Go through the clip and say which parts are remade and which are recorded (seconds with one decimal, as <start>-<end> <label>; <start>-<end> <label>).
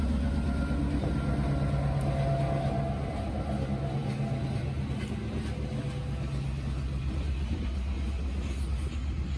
0.0-9.4 recorded